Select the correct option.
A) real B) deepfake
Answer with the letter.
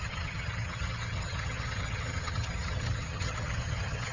B